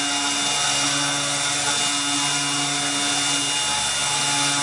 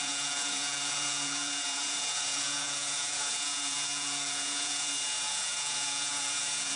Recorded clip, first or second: first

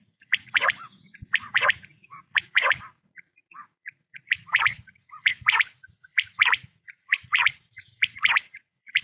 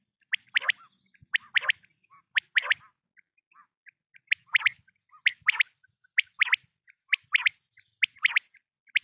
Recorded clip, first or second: second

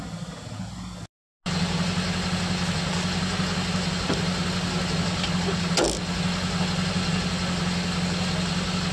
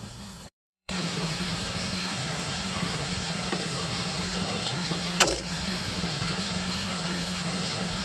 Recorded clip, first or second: first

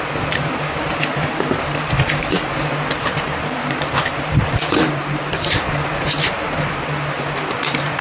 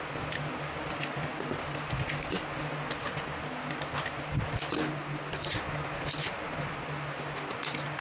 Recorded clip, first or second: second